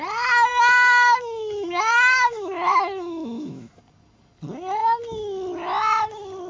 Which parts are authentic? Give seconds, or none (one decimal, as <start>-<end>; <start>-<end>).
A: 0.0-0.5; 3.8-6.5